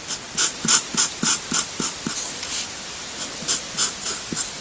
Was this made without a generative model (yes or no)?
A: yes